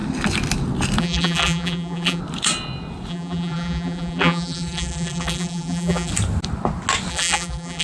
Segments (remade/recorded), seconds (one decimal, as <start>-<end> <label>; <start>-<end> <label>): 0.0-1.0 recorded; 1.0-2.2 remade; 2.2-3.1 recorded; 3.1-6.1 remade; 6.1-7.1 recorded; 7.1-7.8 remade